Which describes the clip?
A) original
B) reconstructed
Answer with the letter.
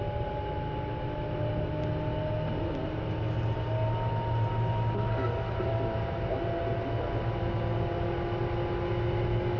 A